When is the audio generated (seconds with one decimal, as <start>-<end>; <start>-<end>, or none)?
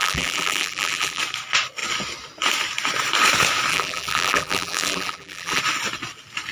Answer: 0.0-1.2; 3.7-5.6